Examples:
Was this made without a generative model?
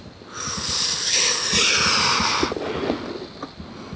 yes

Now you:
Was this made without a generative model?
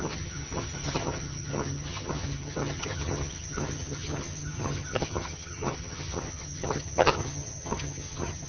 no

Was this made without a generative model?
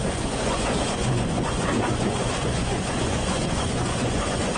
no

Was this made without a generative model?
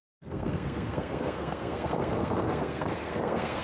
no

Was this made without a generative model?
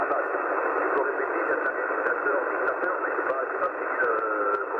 yes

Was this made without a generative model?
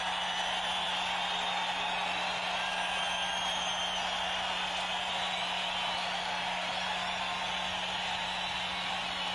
yes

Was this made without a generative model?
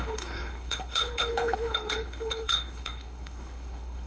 no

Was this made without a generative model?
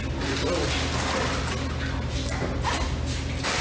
yes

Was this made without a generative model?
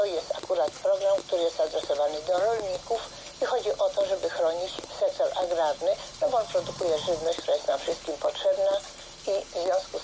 yes